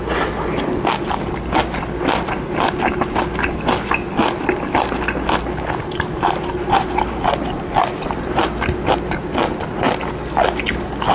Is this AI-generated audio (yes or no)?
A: no